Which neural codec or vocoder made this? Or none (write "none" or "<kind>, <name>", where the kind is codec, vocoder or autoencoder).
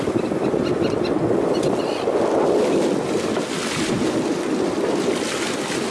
none